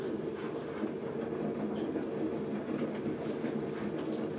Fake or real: real